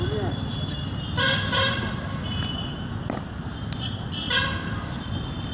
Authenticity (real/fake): real